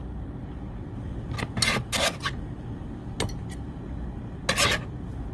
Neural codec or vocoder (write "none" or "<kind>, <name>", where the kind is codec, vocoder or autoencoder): none